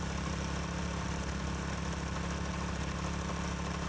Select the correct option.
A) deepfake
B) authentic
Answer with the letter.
B